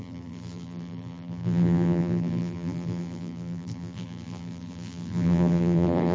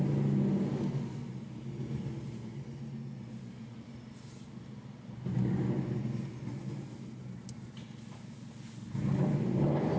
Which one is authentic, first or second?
second